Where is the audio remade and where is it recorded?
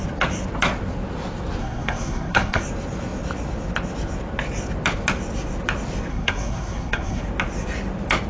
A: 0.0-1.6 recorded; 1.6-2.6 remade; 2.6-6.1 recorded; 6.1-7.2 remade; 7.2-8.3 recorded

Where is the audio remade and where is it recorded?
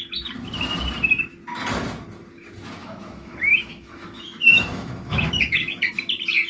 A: 0.0-2.8 recorded; 2.8-5.9 remade; 5.9-6.5 recorded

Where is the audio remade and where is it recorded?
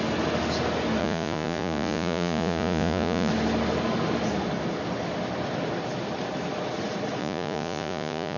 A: 0.0-1.0 recorded; 1.0-3.3 remade; 3.3-7.2 recorded; 7.2-8.4 remade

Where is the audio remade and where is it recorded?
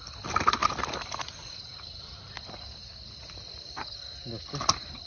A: 0.0-5.1 recorded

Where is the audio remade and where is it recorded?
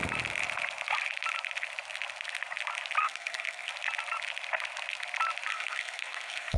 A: 0.0-3.0 recorded; 3.0-3.7 remade; 3.7-5.5 recorded; 5.5-6.6 remade